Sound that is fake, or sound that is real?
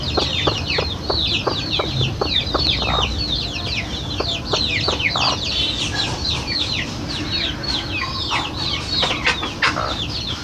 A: real